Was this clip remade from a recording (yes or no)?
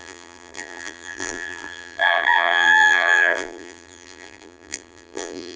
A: yes